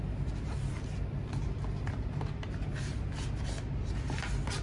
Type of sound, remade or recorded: recorded